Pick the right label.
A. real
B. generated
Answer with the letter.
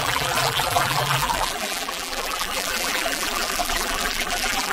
B